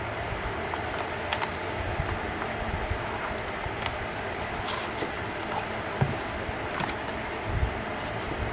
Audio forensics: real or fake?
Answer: real